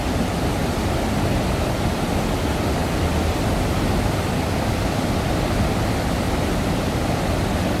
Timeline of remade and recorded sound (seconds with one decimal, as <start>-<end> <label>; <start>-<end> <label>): 0.0-7.8 recorded